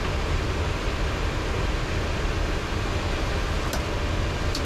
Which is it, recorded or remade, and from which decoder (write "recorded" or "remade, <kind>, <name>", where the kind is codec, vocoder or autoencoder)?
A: recorded